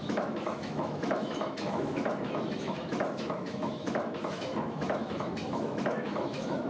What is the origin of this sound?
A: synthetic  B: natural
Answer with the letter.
A